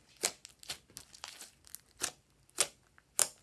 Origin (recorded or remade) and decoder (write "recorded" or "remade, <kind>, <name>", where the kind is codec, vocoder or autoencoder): recorded